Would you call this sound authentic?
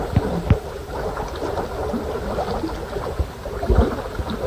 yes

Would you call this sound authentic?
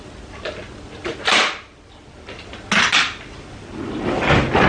yes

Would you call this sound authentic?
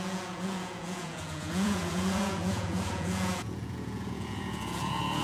no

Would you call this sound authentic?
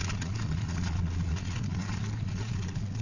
no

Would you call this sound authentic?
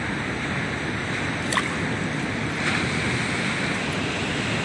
yes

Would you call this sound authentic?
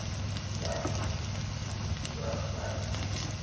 yes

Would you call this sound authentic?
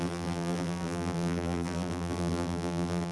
no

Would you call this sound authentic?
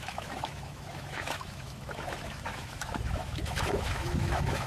no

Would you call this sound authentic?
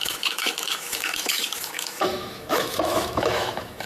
no